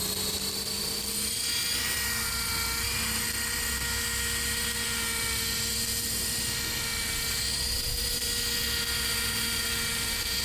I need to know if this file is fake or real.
real